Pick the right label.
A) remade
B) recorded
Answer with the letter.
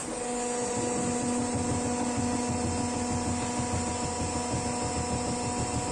B